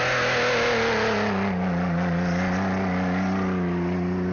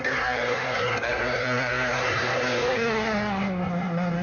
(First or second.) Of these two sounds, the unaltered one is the first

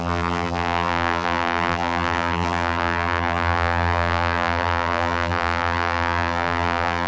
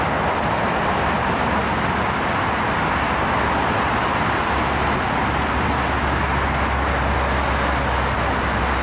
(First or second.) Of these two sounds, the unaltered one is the second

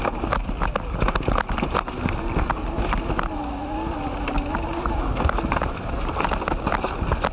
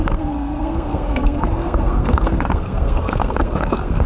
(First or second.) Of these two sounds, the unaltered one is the first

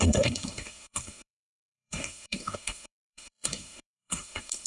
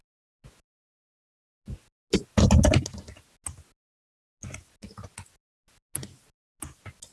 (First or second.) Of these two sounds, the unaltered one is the second